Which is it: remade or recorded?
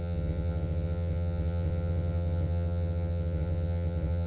remade